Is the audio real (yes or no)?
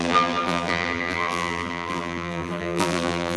no